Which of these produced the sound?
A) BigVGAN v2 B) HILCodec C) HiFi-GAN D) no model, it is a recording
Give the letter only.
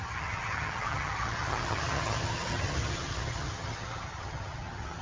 C